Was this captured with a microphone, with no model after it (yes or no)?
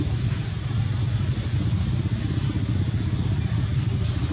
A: yes